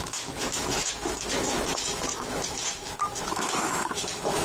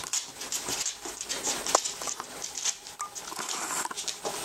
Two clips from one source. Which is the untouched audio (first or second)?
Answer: second